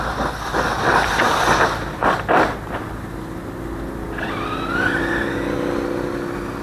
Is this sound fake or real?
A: real